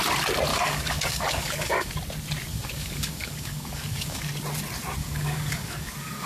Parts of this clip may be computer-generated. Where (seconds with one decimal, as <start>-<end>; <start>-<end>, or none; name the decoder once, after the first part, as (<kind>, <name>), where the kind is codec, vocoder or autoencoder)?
0.5-1.9 (codec, DAC); 2.5-4.3; 5.0-6.3